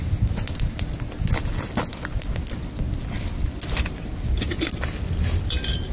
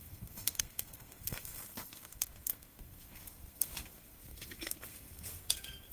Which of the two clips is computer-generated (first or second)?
second